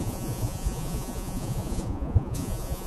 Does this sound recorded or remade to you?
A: remade